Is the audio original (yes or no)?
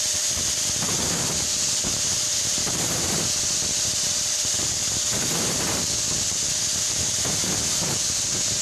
no